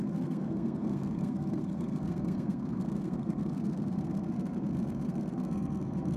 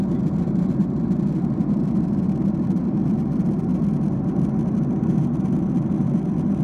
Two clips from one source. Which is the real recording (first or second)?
second